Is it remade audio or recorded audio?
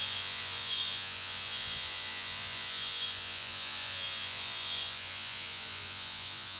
remade